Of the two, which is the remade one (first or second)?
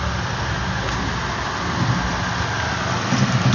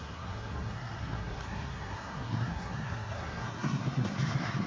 second